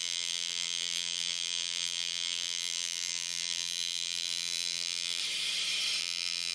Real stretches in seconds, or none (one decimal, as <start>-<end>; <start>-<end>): 5.2-6.0